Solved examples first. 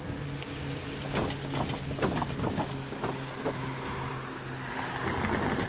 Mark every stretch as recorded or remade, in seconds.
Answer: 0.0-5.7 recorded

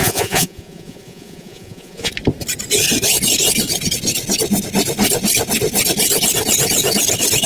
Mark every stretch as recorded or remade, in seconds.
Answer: 0.0-2.1 remade; 2.1-7.5 recorded

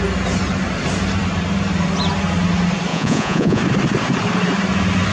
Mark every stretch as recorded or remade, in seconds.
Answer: 0.0-2.9 recorded; 2.9-3.6 remade; 3.6-5.1 recorded

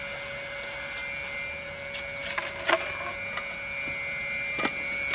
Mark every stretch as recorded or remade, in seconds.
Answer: 0.0-5.1 recorded